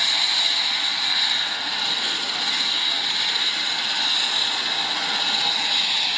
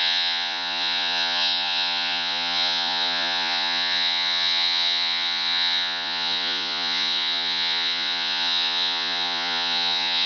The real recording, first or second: first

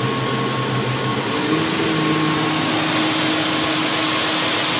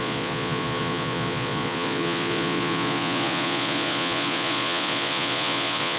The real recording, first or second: first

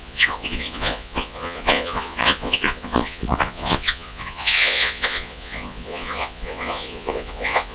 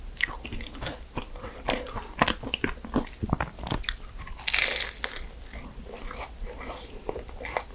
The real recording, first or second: second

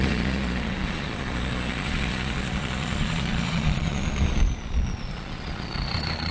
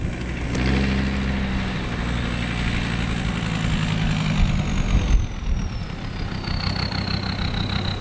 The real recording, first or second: second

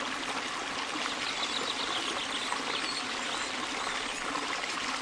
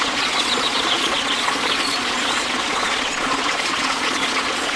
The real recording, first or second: first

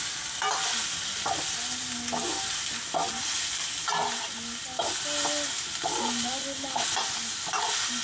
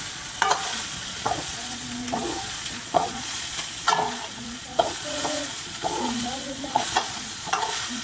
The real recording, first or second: first